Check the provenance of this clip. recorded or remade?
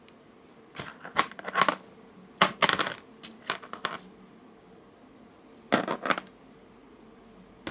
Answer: recorded